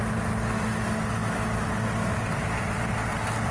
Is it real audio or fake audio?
real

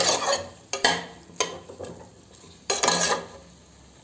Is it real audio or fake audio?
real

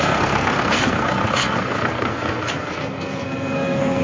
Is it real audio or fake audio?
fake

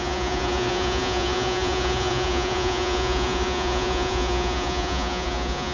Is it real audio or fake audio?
fake